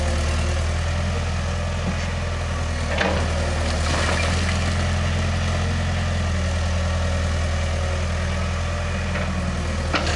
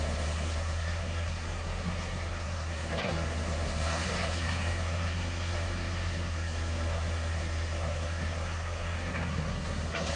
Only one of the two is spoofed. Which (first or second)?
second